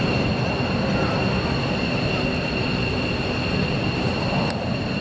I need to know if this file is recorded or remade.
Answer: recorded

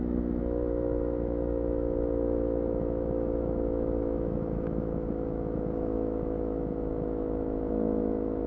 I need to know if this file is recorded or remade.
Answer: remade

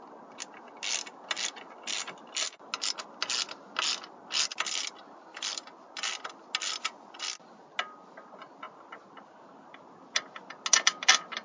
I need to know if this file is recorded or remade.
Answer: recorded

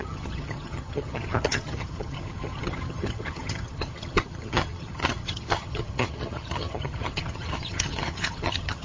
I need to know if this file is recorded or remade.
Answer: remade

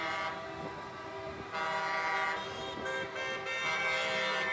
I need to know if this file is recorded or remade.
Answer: recorded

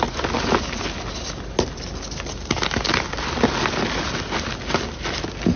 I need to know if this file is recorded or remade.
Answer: recorded